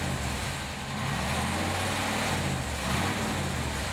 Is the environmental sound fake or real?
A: real